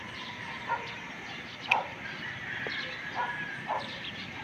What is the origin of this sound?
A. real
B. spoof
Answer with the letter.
A